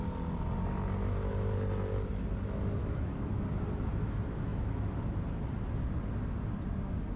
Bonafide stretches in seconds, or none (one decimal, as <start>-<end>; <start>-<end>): 0.0-2.8; 3.4-7.2